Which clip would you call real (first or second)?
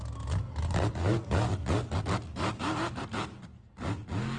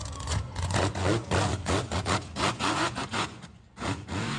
first